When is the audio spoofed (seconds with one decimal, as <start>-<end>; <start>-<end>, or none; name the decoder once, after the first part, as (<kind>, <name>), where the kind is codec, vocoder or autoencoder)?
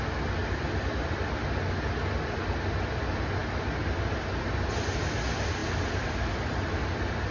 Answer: 0.4-1.3 (vocoder, BigVGAN v2)